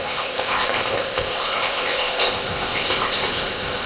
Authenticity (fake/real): fake